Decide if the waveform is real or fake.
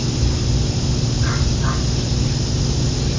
real